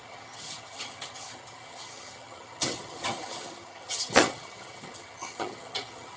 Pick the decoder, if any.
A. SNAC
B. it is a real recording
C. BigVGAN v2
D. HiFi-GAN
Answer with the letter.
D